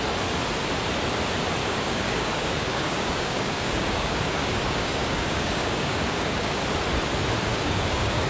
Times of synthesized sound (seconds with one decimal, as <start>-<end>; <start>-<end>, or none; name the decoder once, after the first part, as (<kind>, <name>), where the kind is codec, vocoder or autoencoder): 1.6-6.5 (codec, DAC); 7.5-8.3